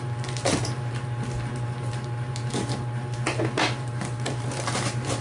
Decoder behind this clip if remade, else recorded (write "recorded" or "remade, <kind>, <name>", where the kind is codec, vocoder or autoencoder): recorded